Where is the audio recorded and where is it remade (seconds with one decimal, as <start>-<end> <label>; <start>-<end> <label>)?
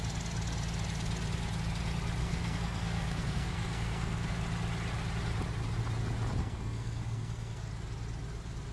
0.0-2.2 recorded; 2.2-4.3 remade; 4.3-6.4 recorded; 6.4-7.7 remade; 7.7-8.7 recorded